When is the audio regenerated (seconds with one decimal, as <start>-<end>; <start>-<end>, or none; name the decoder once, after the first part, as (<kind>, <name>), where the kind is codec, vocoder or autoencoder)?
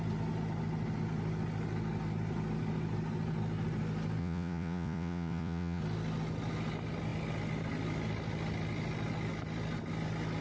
4.2-5.8 (vocoder, Vocos)